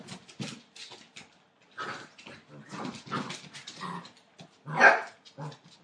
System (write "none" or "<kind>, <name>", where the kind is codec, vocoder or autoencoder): none